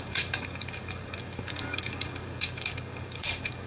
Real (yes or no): no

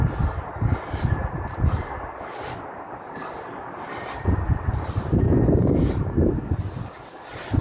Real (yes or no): yes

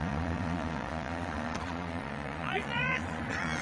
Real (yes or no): no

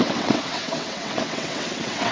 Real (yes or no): no